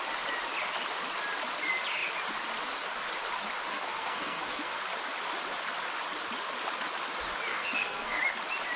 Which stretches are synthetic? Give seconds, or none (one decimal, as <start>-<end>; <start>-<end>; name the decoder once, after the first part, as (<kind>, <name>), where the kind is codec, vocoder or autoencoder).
3.7-4.8 (codec, SNAC); 7.5-8.2